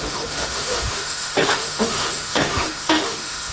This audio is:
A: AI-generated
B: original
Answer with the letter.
A